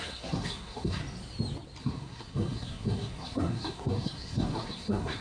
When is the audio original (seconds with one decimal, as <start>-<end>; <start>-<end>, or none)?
1.0-1.8